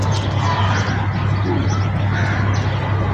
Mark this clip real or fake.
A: real